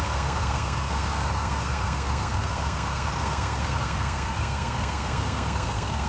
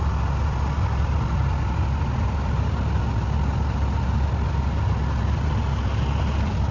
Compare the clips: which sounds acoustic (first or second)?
second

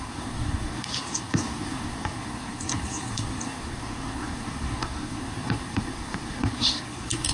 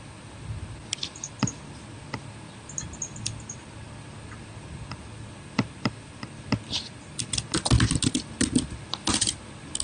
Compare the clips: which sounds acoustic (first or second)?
second